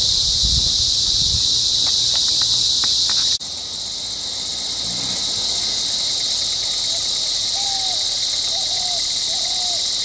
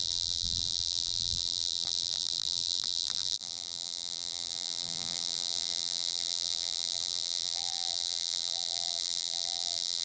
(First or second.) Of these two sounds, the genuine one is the first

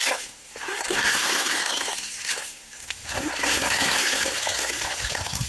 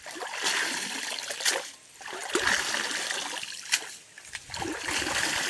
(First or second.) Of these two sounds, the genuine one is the second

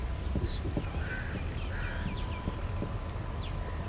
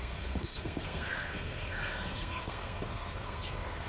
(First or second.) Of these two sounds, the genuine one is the first